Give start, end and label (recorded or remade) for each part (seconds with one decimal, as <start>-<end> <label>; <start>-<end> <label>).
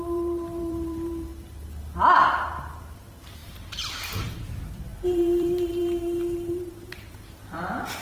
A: 0.0-1.3 remade; 1.3-2.6 recorded; 2.6-8.0 remade